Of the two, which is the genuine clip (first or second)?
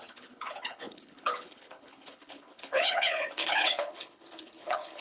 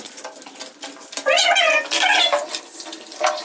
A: second